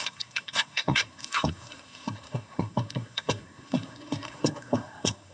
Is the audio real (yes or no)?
no